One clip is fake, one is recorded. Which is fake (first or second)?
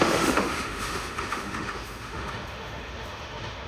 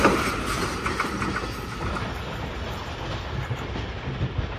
first